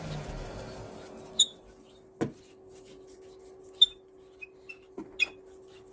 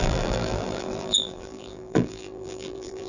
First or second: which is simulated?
second